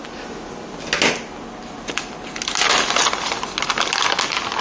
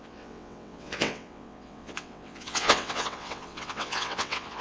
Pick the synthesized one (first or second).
second